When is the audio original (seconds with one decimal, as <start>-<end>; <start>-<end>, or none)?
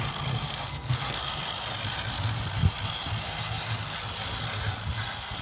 0.0-0.4; 1.2-5.4